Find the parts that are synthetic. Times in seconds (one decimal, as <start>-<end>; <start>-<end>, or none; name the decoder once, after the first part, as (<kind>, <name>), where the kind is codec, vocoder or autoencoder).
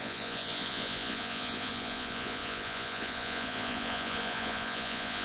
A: 0.0-5.2 (vocoder, Vocos)